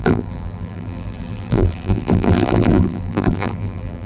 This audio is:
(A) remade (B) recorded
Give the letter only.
A